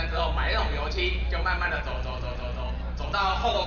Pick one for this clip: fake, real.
real